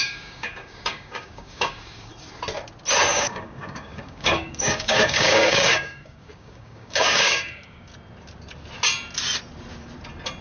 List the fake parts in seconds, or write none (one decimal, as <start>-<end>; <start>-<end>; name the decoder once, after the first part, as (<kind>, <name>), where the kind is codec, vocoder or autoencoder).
0.0-2.1 (codec, DAC); 3.1-7.9